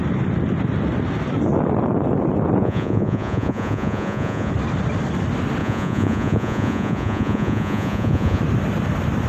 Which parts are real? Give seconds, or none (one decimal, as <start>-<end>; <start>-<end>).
0.0-2.6; 4.5-5.6; 8.4-9.3